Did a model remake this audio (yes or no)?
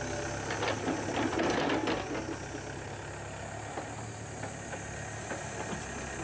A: no